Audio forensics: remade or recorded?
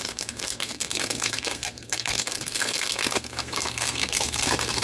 remade